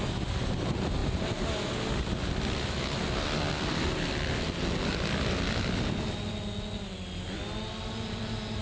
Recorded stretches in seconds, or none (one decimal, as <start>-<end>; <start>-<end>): 0.0-8.6